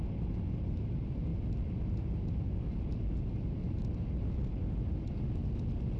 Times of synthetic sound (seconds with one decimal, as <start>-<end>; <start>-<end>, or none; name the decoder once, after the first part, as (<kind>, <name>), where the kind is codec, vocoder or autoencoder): none